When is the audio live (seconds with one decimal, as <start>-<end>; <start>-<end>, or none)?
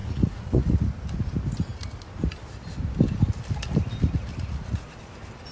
0.8-4.3; 5.0-5.5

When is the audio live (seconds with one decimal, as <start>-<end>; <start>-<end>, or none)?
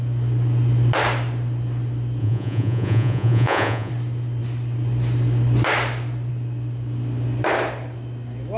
0.0-2.2; 3.9-8.6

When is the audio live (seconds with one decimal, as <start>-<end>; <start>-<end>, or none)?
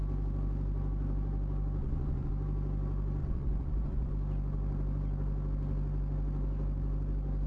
0.0-1.8; 2.3-3.2; 4.1-7.5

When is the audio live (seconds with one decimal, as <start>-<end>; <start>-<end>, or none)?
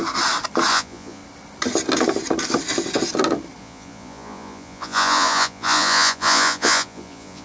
0.0-0.7; 1.2-3.6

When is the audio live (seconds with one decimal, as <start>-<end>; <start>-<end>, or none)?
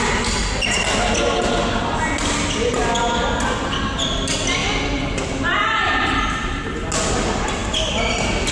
0.0-8.5